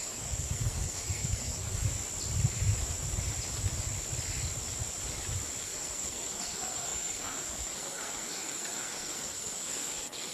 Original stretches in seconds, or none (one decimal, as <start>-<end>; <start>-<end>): 1.8-5.6